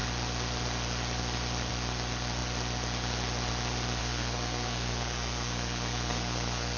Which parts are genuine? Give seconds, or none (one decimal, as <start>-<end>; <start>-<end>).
0.0-4.0